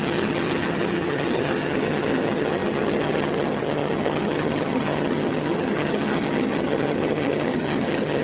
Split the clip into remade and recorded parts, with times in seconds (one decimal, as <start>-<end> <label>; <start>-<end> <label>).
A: 0.0-8.2 remade